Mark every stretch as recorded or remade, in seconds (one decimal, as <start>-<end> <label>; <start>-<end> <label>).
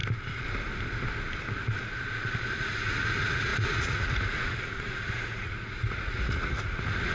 0.0-2.6 recorded; 2.6-7.1 remade